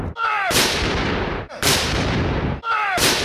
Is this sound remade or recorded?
remade